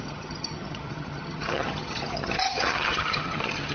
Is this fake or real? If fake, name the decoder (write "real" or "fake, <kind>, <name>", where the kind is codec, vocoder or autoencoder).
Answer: fake, vocoder, HiFi-GAN